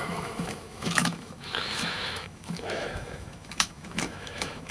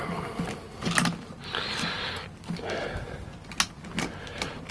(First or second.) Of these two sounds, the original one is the second